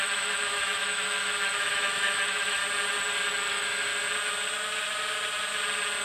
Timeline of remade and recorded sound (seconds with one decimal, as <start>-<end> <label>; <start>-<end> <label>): 0.0-2.6 remade; 2.6-3.5 recorded; 3.5-3.9 remade; 3.9-6.0 recorded